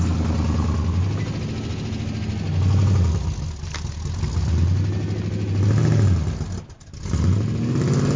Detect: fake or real real